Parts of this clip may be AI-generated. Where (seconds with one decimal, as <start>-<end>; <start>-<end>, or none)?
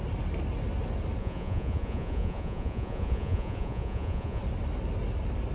1.2-4.4